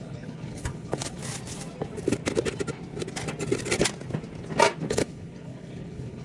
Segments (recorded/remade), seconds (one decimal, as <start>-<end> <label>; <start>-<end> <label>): 0.0-1.2 remade; 1.2-4.9 recorded; 4.9-6.2 remade